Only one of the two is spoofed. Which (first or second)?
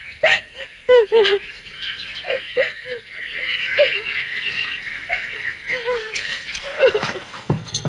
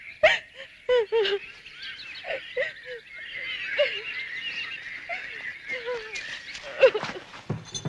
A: first